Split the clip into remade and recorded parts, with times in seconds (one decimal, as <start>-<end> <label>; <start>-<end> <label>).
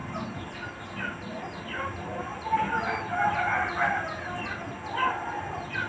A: 0.0-5.9 recorded